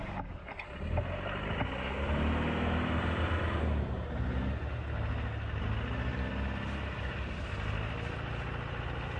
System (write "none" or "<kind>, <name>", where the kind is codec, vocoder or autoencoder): none